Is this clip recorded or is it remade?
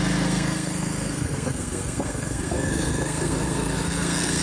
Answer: remade